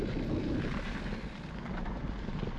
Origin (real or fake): real